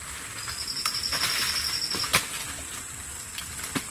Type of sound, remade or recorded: recorded